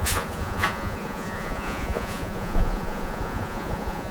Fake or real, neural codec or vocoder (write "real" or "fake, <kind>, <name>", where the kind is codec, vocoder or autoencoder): fake, vocoder, Vocos